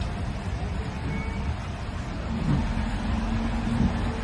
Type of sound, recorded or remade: recorded